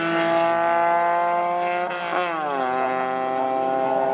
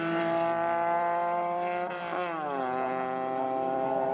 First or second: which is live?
first